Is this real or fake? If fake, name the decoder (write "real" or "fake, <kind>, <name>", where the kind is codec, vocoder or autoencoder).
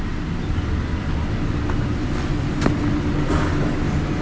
real